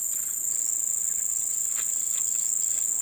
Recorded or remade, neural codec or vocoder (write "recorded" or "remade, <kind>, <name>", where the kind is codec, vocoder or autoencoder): recorded